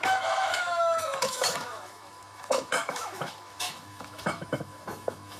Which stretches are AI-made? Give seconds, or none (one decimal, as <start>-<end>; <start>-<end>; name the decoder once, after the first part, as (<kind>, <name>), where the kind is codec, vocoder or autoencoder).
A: 0.0-5.4 (autoencoder, DAC-VAE)